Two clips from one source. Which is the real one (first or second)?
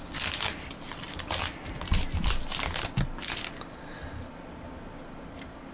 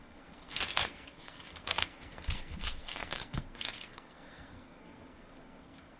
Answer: first